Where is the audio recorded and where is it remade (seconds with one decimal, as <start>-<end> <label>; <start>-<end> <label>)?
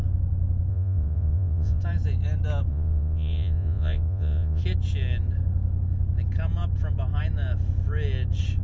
0.0-0.7 recorded; 0.7-1.8 remade; 1.8-2.7 recorded; 2.7-4.6 remade; 4.6-8.6 recorded